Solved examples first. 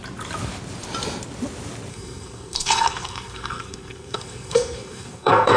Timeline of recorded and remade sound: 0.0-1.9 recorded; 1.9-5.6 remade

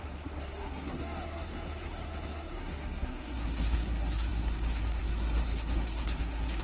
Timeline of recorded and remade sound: 0.0-6.6 remade

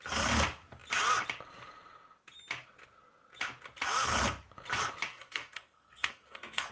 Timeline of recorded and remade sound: 0.0-5.1 recorded; 5.1-6.7 remade

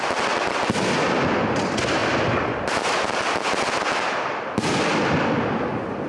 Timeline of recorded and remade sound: 0.0-6.1 recorded